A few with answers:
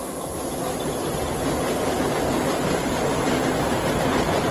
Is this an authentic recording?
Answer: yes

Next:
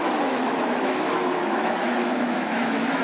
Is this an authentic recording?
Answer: no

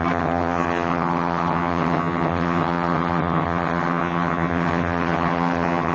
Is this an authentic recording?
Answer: no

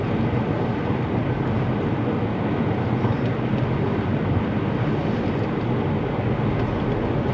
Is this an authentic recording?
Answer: yes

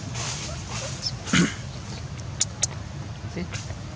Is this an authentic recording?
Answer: yes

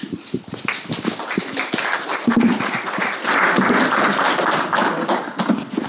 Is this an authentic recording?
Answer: yes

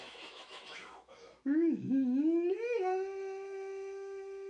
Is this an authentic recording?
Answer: no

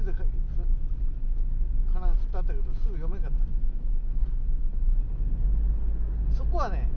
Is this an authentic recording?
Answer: yes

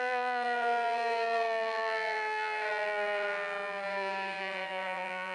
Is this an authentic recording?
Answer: no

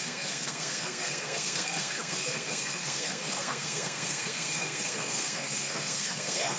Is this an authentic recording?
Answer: no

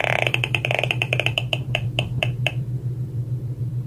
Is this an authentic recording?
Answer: no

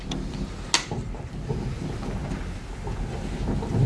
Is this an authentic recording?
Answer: yes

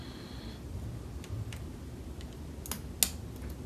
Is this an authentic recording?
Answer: yes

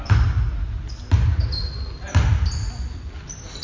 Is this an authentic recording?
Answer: yes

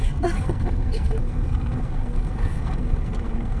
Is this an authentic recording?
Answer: no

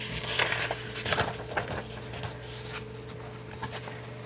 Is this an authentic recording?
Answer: yes